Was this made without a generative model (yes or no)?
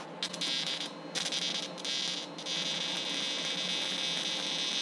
yes